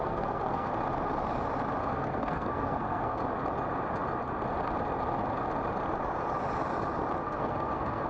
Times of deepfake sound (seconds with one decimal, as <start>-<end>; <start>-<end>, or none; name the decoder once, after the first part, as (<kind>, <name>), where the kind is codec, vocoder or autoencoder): 0.0-0.7 (codec, SNAC); 1.8-3.2; 7.2-8.1